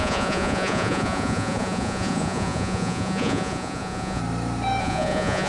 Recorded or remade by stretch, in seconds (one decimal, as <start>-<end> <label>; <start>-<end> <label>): 0.0-4.2 remade; 4.2-4.8 recorded; 4.8-5.5 remade